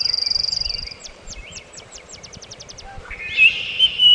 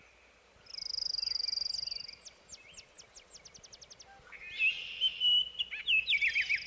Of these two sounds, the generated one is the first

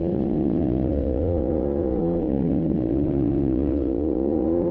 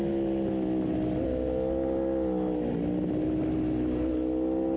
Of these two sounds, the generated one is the first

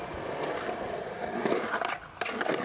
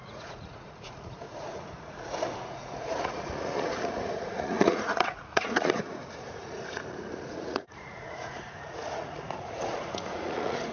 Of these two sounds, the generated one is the second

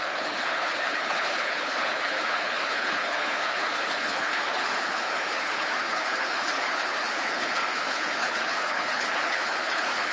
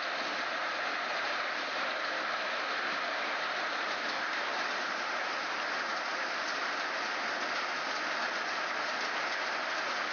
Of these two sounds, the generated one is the first